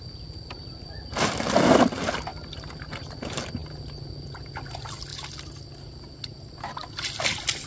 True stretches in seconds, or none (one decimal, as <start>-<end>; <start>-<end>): 0.0-7.7